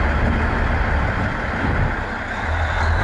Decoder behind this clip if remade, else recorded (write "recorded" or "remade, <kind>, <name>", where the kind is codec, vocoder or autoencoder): recorded